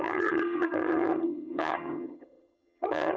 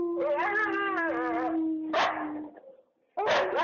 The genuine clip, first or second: second